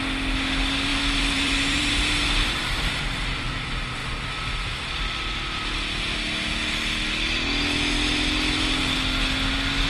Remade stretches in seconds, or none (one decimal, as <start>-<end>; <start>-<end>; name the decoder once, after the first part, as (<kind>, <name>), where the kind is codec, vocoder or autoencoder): 0.9-3.0 (vocoder, BigVGAN v2)